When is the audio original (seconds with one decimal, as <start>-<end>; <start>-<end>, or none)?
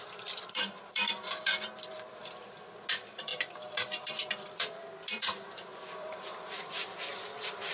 2.2-2.9